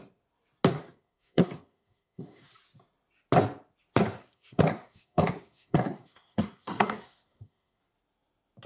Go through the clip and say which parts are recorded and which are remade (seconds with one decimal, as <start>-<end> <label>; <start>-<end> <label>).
0.0-0.7 recorded; 0.7-2.5 remade; 2.5-4.2 recorded; 4.2-7.8 remade; 7.8-8.7 recorded